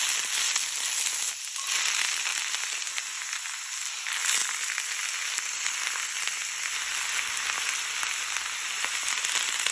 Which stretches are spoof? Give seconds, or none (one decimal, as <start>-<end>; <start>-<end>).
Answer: none